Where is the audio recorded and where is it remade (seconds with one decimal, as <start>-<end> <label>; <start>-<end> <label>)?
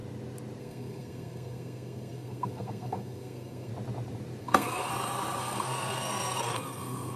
0.0-0.6 recorded; 0.6-3.7 remade; 3.7-4.4 recorded; 4.4-4.9 remade; 4.9-5.4 recorded; 5.4-7.2 remade